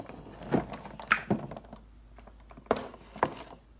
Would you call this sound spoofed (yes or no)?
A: no